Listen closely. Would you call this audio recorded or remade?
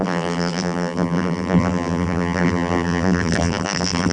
remade